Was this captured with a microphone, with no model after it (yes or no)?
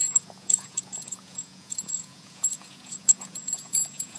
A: no